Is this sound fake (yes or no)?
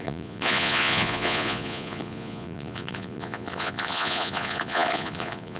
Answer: yes